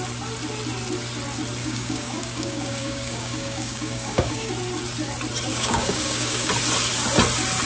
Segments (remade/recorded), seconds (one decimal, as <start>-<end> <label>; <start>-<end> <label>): 0.0-1.6 recorded; 1.6-4.5 remade; 4.5-5.5 recorded; 5.5-6.5 remade; 6.5-7.7 recorded